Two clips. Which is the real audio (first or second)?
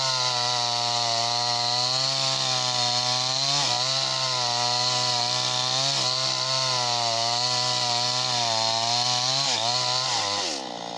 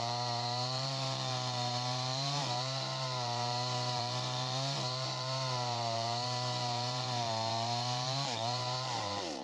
first